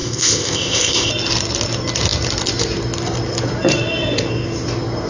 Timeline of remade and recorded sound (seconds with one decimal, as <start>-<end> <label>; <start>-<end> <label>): 0.0-1.1 remade; 1.1-5.1 recorded